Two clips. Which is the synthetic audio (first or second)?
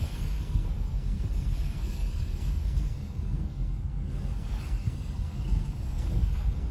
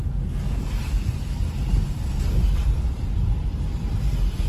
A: first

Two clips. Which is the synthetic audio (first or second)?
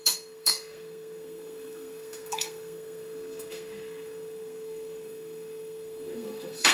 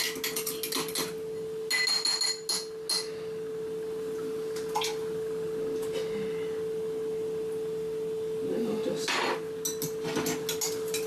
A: first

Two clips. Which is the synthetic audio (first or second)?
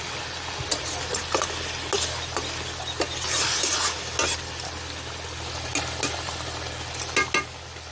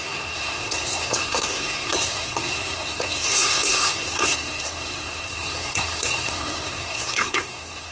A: second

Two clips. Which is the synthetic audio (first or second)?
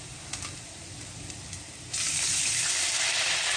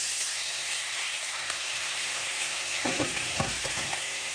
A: second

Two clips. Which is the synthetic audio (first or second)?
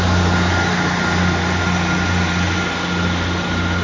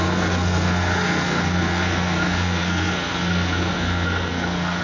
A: second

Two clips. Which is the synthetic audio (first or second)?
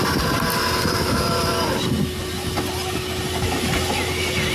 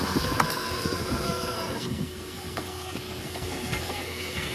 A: second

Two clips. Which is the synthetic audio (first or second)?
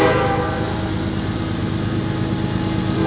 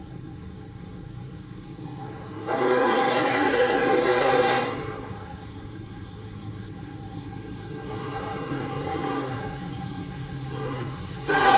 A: second